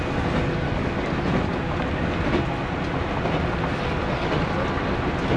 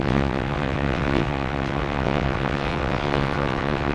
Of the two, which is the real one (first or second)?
first